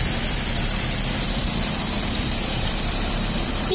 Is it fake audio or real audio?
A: fake